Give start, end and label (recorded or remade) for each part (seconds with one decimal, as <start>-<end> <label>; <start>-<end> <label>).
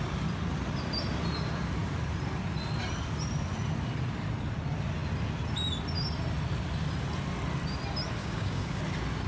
0.0-8.2 recorded; 8.2-8.8 remade; 8.8-9.3 recorded